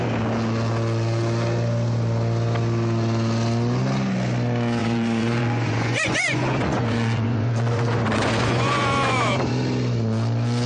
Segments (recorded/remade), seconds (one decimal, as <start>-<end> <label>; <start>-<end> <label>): 0.0-4.8 recorded; 4.8-9.5 remade; 9.5-10.7 recorded